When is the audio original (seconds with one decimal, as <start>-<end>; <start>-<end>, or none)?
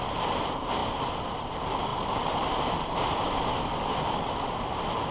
0.0-5.1